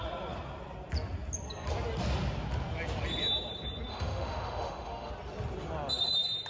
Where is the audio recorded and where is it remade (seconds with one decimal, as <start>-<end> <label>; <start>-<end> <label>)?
0.0-3.9 recorded; 3.9-5.1 remade; 5.1-6.5 recorded